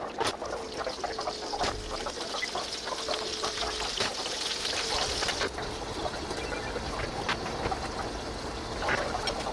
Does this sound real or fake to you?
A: real